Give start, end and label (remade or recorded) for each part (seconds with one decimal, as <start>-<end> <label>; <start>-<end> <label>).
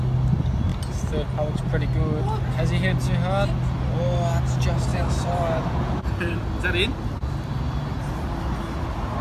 0.0-4.9 recorded; 4.9-6.5 remade; 6.5-9.2 recorded